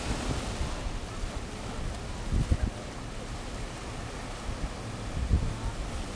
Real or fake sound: real